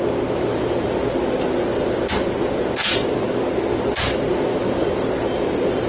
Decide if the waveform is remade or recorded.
recorded